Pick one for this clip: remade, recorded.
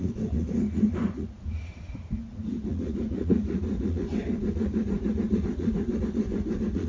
remade